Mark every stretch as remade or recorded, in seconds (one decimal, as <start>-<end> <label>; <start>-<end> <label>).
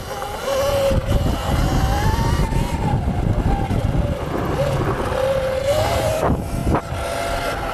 0.0-7.7 recorded